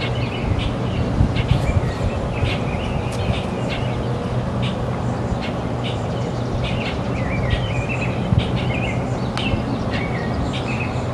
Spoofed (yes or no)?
no